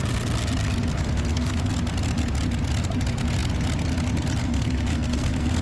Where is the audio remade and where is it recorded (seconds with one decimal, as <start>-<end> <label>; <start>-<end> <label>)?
0.0-0.9 recorded; 0.9-1.7 remade; 1.7-4.4 recorded; 4.4-5.6 remade